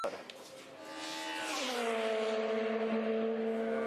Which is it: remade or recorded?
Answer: recorded